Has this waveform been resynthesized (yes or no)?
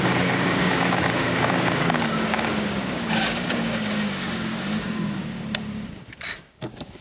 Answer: yes